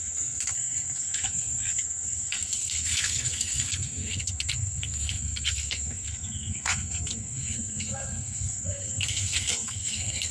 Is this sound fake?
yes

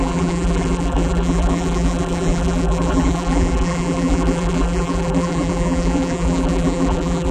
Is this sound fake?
yes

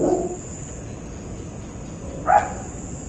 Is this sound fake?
no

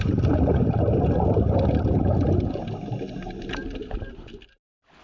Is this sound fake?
no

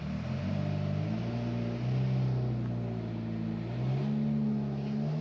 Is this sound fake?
no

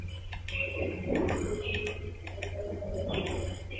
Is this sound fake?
no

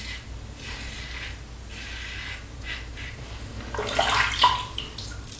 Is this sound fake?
no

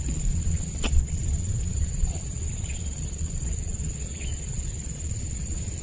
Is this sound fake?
yes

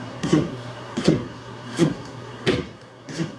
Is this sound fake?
yes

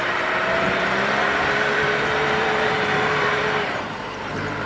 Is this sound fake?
yes